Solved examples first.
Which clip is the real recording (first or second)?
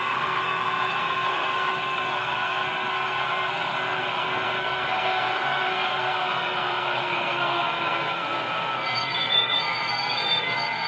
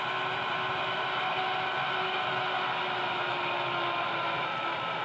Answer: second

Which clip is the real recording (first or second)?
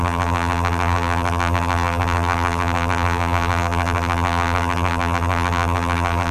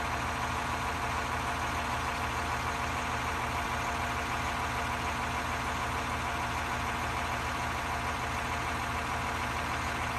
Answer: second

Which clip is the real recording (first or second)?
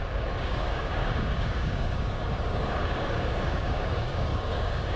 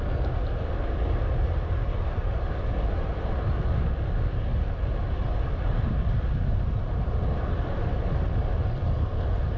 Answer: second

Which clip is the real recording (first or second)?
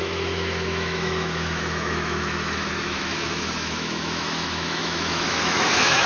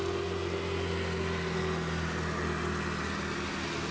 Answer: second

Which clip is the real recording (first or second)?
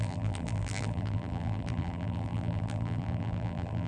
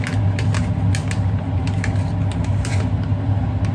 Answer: second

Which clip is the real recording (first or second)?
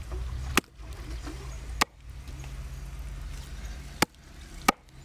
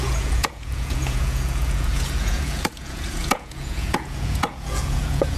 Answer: first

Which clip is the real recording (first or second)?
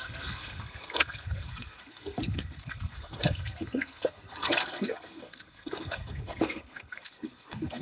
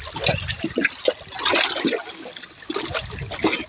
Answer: second